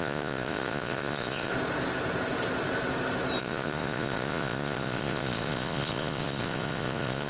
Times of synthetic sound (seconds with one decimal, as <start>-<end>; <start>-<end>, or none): 0.0-1.5; 3.4-7.3